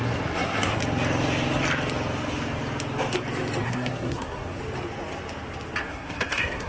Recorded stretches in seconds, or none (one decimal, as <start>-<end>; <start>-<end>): 0.8-3.6; 4.6-5.8